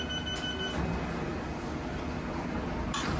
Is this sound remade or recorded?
recorded